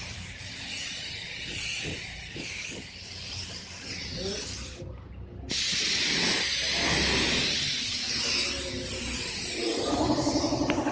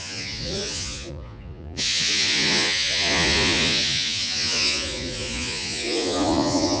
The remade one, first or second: second